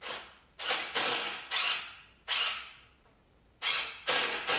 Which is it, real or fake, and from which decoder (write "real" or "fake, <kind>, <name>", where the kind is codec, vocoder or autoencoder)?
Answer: real